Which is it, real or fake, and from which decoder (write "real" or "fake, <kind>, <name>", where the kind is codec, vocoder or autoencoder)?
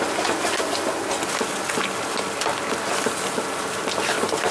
real